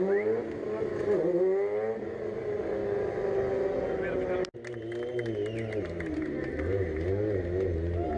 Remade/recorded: recorded